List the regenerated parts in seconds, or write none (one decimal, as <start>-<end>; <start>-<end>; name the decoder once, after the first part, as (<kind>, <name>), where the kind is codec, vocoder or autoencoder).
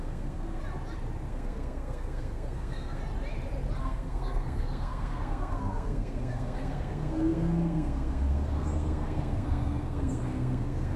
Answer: 0.0-0.6 (codec, SNAC); 1.3-3.0; 3.8-11.0